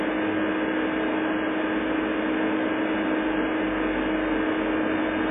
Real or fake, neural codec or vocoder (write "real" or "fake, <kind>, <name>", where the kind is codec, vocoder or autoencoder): real